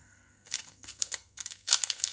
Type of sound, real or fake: fake